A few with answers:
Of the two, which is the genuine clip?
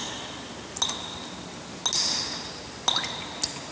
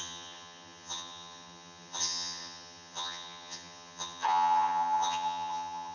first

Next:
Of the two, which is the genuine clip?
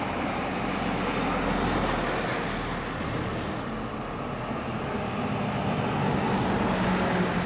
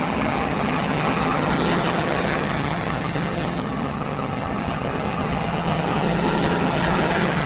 first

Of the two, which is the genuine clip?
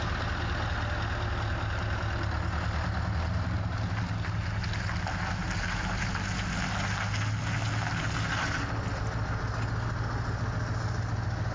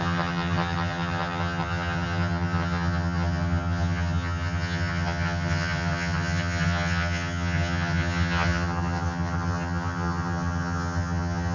first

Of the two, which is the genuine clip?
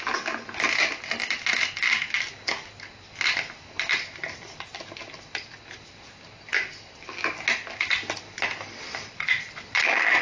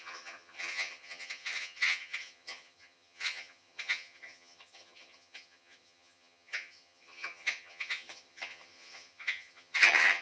first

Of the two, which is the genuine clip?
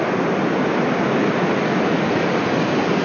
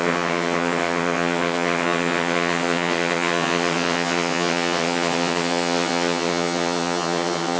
first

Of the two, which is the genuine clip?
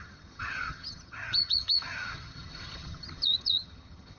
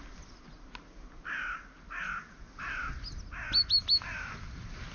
second